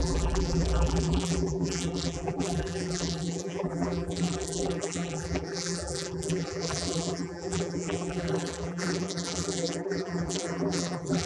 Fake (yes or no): yes